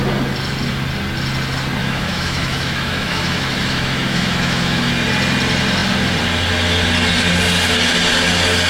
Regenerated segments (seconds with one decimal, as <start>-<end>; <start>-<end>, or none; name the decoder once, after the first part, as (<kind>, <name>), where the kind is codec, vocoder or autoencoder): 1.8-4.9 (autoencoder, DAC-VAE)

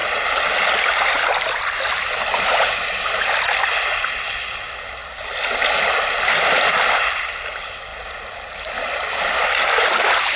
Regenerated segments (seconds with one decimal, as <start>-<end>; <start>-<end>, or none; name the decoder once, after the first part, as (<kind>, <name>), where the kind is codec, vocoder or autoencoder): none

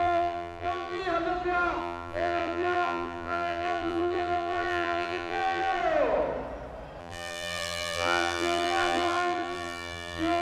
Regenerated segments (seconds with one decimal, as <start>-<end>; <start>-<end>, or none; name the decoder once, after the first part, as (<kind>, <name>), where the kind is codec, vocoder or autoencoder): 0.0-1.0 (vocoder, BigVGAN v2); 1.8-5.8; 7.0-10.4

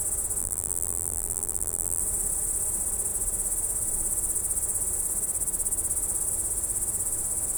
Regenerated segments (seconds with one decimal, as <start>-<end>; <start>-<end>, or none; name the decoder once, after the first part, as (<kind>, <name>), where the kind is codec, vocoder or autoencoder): 0.4-2.0 (vocoder, BigVGAN v2)

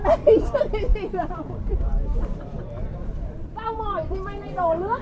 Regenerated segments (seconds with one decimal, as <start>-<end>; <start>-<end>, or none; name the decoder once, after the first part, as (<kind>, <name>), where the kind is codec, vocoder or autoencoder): 0.0-5.0 (vocoder, BigVGAN v2)